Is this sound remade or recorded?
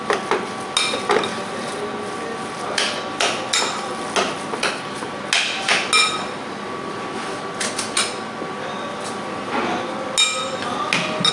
recorded